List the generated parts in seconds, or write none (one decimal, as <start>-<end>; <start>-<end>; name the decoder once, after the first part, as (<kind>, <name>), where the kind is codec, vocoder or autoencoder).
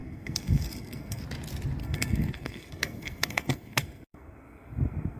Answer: 0.0-1.2 (codec, SNAC); 1.8-5.2